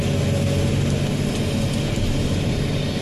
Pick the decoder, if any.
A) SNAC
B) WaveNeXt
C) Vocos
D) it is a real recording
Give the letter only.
D